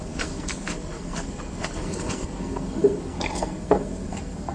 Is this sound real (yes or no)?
no